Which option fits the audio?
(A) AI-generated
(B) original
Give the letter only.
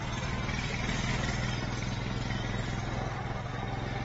B